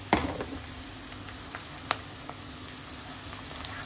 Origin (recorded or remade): recorded